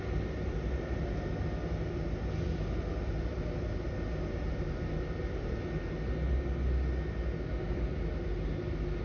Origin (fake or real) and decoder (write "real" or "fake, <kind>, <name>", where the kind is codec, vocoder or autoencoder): real